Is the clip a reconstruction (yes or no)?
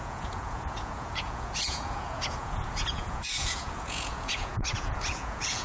yes